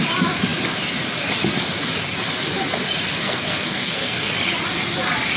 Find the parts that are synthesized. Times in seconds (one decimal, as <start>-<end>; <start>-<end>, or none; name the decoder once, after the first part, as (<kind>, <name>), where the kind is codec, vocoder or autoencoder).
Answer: 3.2-4.3 (codec, SNAC)